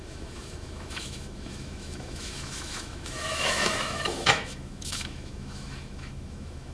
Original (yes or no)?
no